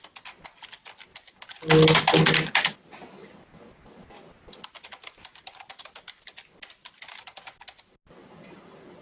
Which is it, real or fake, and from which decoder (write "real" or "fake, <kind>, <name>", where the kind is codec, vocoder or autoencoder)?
real